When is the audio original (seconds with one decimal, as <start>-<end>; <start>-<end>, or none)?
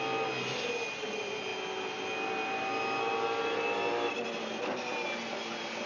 0.0-5.9